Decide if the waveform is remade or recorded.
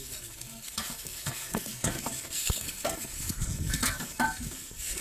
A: remade